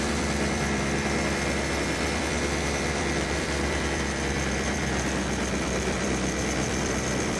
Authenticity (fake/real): fake